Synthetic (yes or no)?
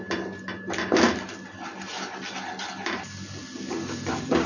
no